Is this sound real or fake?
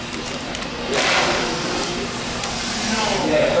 fake